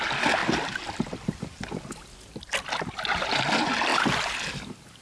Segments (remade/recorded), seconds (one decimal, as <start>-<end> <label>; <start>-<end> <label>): 0.0-5.0 recorded